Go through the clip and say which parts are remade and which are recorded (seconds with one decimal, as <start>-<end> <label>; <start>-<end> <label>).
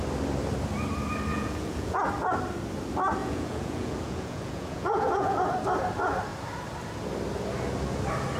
0.0-1.3 recorded; 1.3-2.0 remade; 2.0-3.2 recorded; 3.2-5.4 remade; 5.4-8.4 recorded